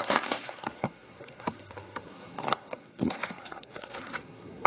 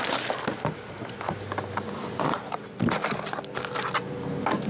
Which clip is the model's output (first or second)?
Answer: first